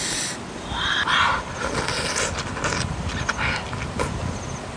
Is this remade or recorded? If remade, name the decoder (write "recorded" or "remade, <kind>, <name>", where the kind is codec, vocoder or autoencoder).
recorded